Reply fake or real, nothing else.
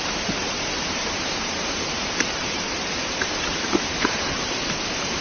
fake